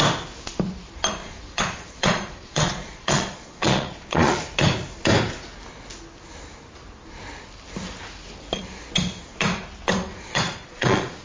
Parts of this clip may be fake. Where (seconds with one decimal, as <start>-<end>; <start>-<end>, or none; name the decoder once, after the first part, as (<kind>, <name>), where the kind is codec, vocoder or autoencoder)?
1.2-4.4 (vocoder, Vocos); 10.1-11.2